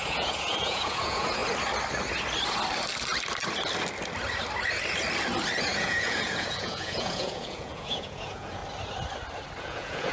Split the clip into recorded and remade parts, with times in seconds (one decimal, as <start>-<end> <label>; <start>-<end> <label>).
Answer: 0.0-1.4 remade; 1.4-5.6 recorded; 5.6-8.6 remade; 8.6-9.6 recorded; 9.6-10.1 remade